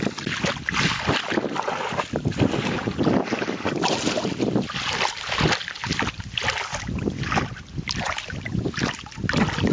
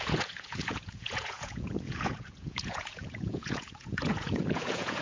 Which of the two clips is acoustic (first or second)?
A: first